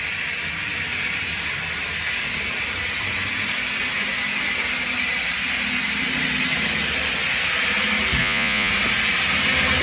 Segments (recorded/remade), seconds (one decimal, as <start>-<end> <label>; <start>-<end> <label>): 0.0-8.2 recorded; 8.2-8.7 remade; 8.7-9.8 recorded